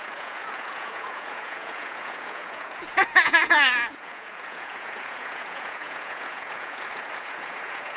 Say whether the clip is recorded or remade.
remade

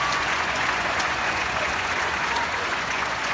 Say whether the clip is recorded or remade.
remade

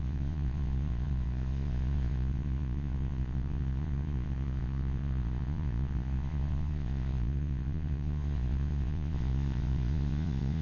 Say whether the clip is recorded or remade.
remade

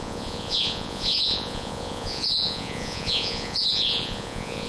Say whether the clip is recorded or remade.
remade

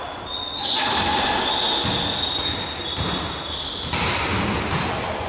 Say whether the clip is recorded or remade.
recorded